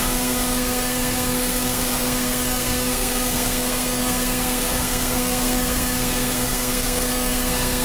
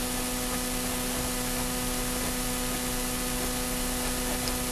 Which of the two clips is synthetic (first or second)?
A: first